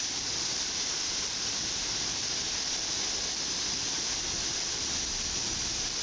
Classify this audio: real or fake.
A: real